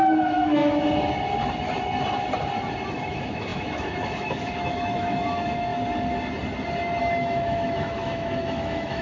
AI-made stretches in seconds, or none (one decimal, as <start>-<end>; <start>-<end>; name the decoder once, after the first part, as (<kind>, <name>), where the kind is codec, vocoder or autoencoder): 0.0-0.6 (autoencoder, DAC-VAE); 2.9-5.7; 7.0-9.0